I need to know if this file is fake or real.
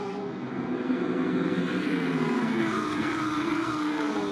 fake